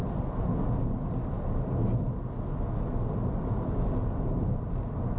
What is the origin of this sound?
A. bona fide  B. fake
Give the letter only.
A